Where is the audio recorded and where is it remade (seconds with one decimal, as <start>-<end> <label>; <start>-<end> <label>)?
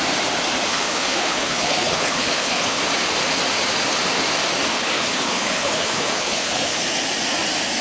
0.0-0.7 recorded; 0.7-2.8 remade; 2.8-4.7 recorded; 4.7-6.8 remade; 6.8-7.8 recorded